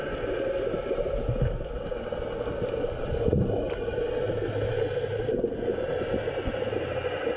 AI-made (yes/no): no